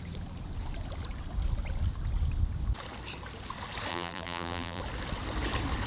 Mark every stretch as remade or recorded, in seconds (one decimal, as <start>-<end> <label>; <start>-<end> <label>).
0.0-3.9 recorded; 3.9-4.8 remade; 4.8-5.9 recorded